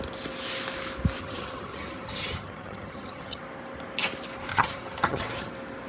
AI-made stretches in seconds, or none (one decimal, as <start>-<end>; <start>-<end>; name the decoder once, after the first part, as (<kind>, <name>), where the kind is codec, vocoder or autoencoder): 1.2-3.4 (vocoder, HiFi-GAN); 4.5-5.5